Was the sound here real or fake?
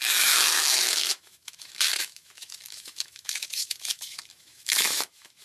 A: fake